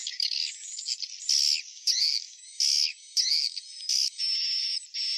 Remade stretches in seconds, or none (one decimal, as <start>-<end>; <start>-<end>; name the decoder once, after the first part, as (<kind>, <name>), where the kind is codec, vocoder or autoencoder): 0.0-1.0 (autoencoder, DAC-VAE); 1.7-4.8